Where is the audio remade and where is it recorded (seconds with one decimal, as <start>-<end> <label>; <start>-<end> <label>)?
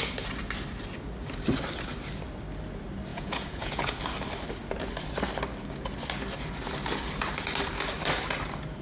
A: 0.0-3.1 recorded; 3.1-3.9 remade; 3.9-8.8 recorded